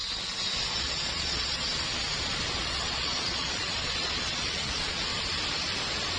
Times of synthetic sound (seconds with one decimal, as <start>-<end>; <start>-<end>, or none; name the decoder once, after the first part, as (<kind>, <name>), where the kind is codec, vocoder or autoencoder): 0.7-1.7 (vocoder, Vocos); 2.6-5.1